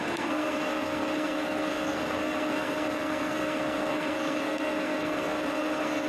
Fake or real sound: fake